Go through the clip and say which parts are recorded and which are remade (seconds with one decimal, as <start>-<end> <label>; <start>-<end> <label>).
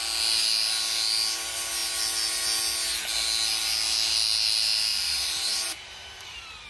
0.0-4.9 recorded; 4.9-6.7 remade